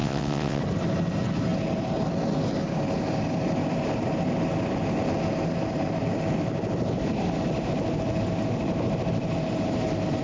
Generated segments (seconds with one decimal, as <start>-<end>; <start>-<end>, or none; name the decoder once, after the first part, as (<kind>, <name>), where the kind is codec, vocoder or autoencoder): 0.0-0.6 (vocoder, WaveNeXt)